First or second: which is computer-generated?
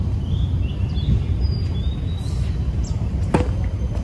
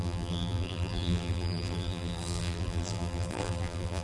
second